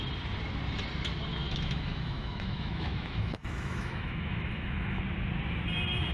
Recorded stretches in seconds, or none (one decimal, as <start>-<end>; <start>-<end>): 0.0-1.3; 5.0-6.1